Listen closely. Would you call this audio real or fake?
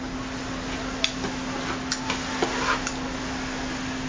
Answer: real